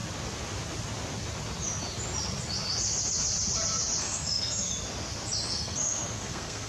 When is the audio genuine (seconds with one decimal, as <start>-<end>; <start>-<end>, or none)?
0.0-4.0; 4.7-5.5